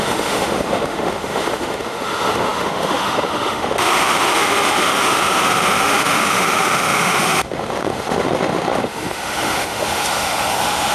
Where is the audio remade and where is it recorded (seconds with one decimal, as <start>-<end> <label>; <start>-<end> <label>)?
0.0-10.9 remade